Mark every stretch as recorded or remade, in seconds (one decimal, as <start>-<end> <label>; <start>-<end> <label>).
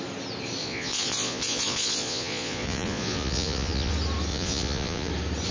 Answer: 0.0-0.6 recorded; 0.6-3.9 remade; 3.9-4.3 recorded; 4.3-5.1 remade; 5.1-5.5 recorded